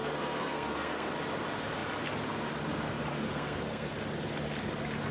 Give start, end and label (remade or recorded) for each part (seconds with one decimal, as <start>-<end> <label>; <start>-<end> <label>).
0.0-1.1 remade; 1.1-3.1 recorded; 3.1-3.9 remade; 3.9-5.1 recorded